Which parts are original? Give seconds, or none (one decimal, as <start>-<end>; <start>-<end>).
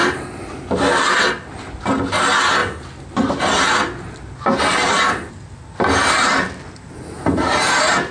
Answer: 0.0-8.1